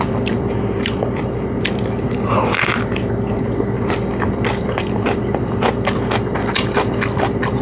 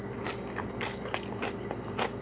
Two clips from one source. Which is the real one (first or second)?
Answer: second